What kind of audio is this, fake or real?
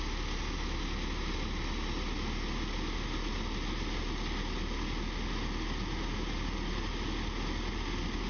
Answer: real